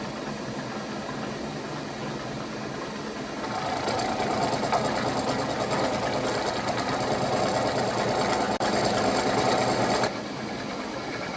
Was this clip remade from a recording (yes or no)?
no